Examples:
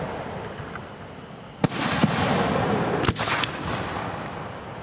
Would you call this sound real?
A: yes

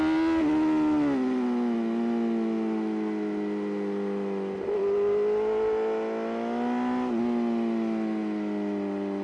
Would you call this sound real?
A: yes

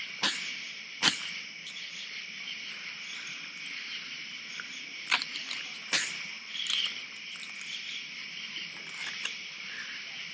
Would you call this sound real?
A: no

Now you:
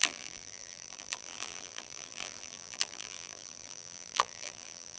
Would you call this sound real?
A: no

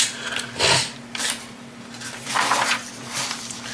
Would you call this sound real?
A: yes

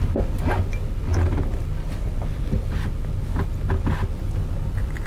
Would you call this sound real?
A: yes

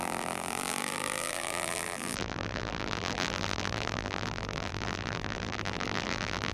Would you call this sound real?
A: no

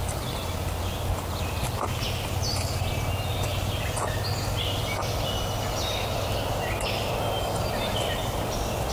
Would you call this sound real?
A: yes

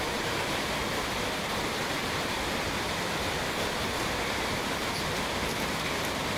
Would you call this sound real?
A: yes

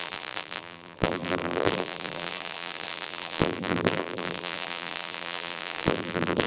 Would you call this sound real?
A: no